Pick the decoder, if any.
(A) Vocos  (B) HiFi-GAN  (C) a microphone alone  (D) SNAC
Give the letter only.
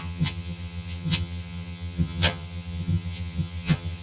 B